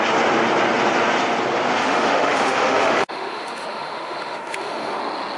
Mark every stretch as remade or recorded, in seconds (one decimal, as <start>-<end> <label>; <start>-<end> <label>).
0.0-1.8 recorded; 1.8-5.0 remade; 5.0-5.4 recorded